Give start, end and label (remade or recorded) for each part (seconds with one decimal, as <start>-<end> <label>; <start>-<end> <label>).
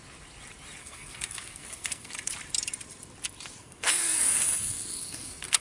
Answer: 0.0-0.8 recorded; 0.8-2.1 remade; 2.1-3.6 recorded; 3.6-5.6 remade